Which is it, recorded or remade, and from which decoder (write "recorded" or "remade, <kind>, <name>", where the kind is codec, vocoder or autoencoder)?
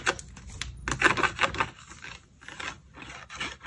recorded